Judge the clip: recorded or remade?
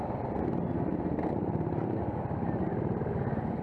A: recorded